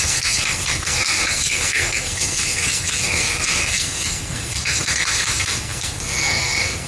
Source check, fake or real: fake